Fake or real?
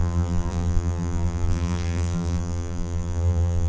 fake